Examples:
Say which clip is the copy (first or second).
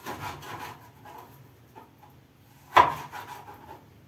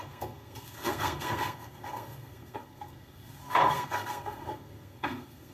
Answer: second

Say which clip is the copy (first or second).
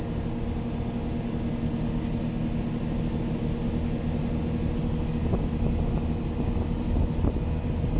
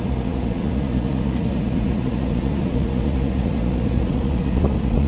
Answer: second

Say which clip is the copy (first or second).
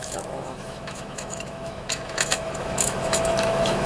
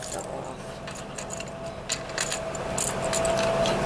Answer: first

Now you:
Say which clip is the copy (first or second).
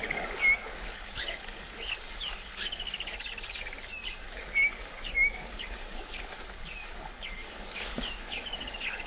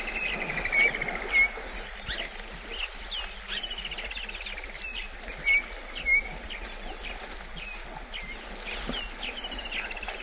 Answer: first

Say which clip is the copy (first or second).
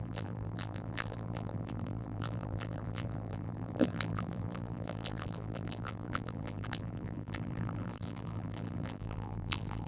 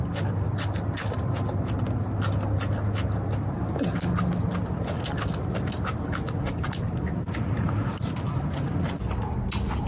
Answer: first